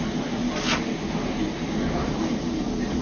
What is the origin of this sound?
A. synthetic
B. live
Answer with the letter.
B